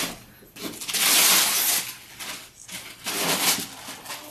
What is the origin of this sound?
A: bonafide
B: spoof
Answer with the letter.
A